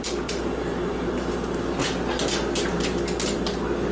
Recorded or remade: recorded